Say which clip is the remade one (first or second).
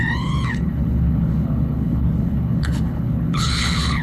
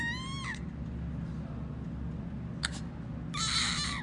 first